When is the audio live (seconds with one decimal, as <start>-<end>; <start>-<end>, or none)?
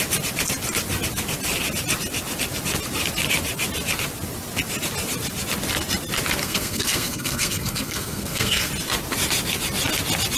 0.0-6.4; 8.7-10.4